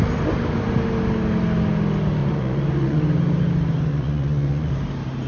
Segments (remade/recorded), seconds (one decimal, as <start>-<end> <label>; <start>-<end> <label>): 0.0-2.2 recorded; 2.2-3.0 remade; 3.0-3.9 recorded; 3.9-4.7 remade; 4.7-5.3 recorded

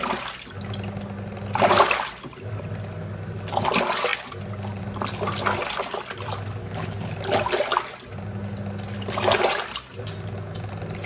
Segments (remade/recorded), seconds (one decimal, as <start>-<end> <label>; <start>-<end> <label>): 0.0-6.6 recorded; 6.6-7.1 remade; 7.1-11.1 recorded

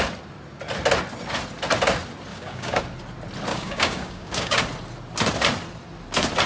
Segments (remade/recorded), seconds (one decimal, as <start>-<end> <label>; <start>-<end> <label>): 0.0-2.3 recorded; 2.3-2.8 remade; 2.8-3.5 recorded; 3.5-4.6 remade; 4.6-6.5 recorded

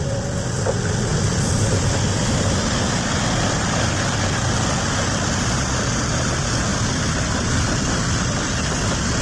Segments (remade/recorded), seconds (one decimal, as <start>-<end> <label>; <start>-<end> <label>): 0.0-1.1 recorded; 1.1-5.7 remade; 5.7-6.7 recorded; 6.7-7.9 remade; 7.9-9.2 recorded